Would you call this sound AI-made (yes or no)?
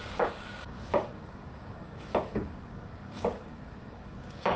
yes